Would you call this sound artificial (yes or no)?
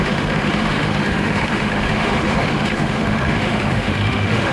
yes